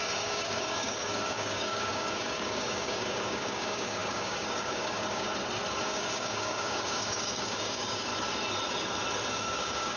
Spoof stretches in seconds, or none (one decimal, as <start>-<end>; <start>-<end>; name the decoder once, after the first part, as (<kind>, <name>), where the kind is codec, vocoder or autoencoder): 0.0-5.3 (codec, DAC); 5.8-8.1; 9.3-10.0